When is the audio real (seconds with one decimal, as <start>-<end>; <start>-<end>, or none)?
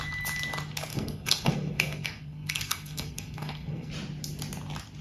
0.0-0.9; 3.9-5.0